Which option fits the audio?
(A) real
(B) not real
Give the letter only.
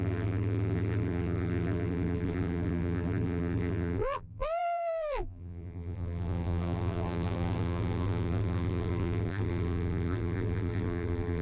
B